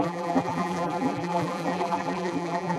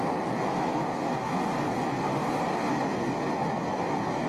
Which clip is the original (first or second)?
second